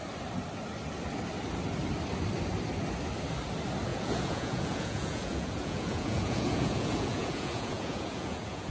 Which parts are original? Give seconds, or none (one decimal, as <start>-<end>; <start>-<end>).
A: 0.0-3.9